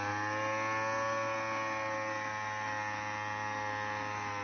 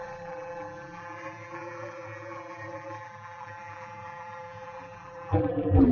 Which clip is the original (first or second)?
first